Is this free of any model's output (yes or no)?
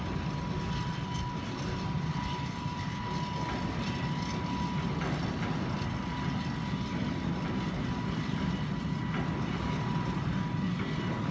yes